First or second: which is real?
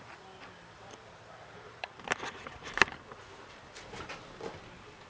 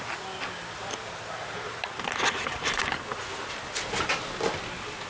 second